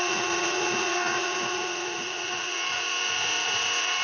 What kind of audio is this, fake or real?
fake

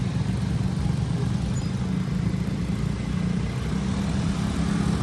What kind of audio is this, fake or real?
real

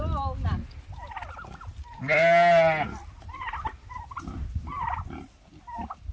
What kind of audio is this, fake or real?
real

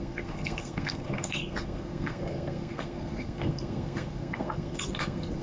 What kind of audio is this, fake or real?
fake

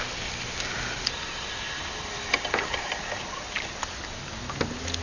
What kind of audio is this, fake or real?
real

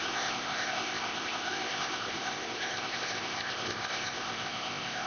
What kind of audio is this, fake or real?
fake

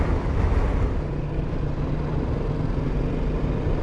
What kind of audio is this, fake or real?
real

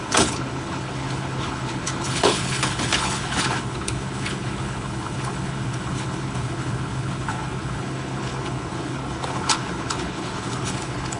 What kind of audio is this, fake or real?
fake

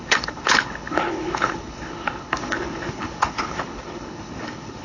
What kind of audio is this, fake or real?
fake